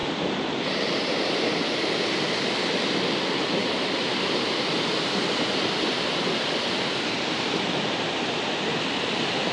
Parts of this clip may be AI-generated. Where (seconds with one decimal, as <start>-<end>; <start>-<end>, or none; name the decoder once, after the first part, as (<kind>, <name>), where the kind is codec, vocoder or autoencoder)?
0.0-3.0 (vocoder, BigVGAN v2); 3.6-8.0